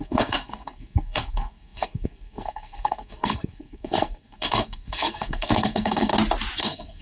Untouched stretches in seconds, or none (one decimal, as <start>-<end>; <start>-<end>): 6.1-6.6